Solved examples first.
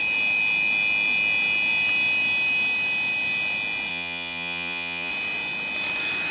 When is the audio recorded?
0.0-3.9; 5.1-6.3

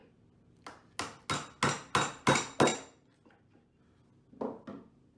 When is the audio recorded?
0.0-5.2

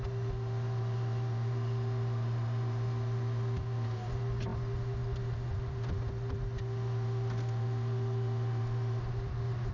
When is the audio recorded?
0.0-9.7

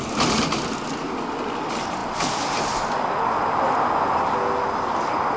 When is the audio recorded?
0.0-5.4

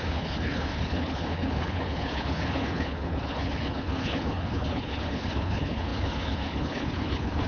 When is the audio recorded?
none

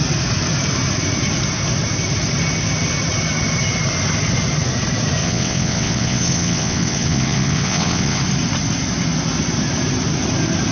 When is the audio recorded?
0.0-5.2; 8.2-10.7

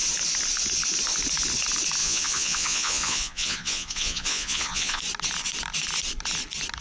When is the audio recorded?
0.0-2.0; 5.0-6.8

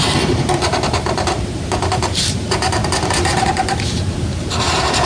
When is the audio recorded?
2.8-3.4